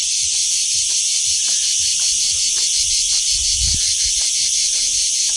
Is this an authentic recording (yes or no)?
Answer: yes